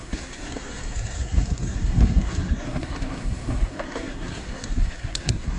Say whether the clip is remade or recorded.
remade